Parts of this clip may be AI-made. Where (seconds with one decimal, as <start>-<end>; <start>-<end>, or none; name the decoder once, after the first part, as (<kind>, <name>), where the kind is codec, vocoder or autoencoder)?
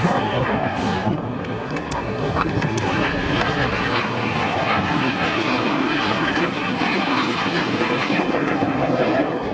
0.0-9.5 (codec, SNAC)